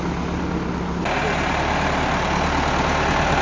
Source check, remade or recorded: recorded